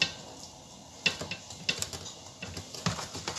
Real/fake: real